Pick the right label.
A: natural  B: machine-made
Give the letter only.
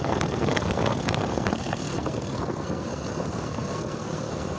B